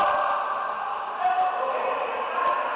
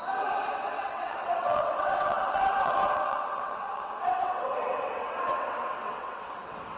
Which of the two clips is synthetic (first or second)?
second